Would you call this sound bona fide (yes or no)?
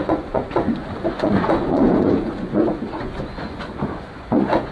no